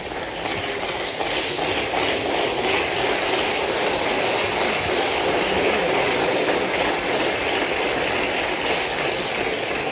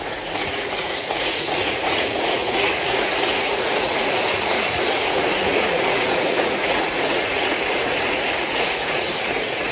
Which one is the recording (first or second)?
first